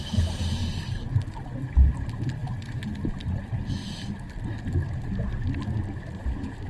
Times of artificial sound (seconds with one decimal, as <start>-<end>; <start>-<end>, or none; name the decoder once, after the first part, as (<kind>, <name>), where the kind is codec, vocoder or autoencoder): 0.0-0.6 (vocoder, BigVGAN v2); 1.4-2.4; 6.0-6.7